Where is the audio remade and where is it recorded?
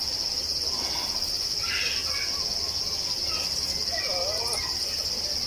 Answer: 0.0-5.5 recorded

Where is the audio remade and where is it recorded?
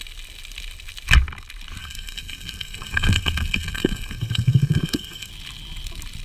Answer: 0.0-1.8 recorded; 1.8-5.3 remade; 5.3-6.2 recorded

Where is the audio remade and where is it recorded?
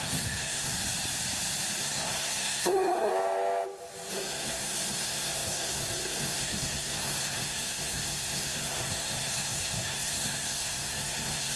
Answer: 0.0-0.7 remade; 0.7-1.8 recorded; 1.8-3.1 remade; 3.1-4.1 recorded; 4.1-11.6 remade